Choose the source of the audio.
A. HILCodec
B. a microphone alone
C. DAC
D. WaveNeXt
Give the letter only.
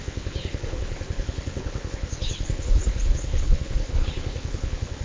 A